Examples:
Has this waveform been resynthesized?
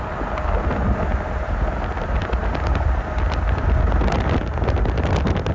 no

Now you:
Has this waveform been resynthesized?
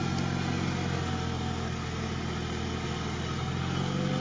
no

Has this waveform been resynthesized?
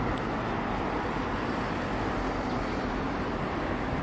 no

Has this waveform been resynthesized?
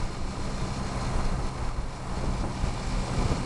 no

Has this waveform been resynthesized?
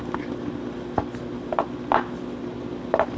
no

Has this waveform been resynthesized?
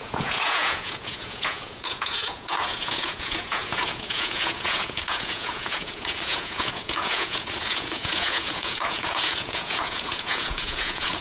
yes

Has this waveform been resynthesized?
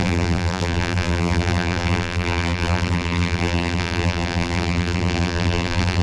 yes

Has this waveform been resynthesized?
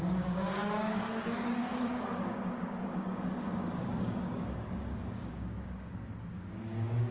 yes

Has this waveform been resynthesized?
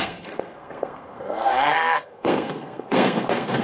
yes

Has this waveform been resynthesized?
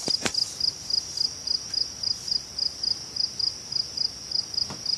no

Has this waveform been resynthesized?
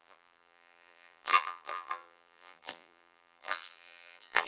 yes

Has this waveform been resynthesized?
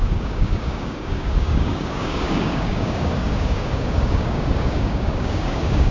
yes